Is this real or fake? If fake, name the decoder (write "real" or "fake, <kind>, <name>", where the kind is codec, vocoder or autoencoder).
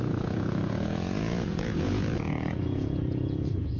fake, vocoder, Vocos